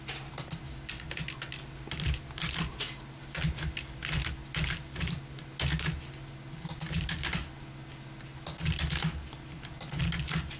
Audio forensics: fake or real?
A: real